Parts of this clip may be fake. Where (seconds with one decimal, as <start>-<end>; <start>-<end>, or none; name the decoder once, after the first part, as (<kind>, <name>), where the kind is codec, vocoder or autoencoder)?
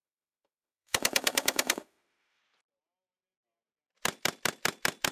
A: 0.0-2.4 (autoencoder, DAC-VAE)